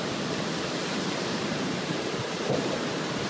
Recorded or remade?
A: remade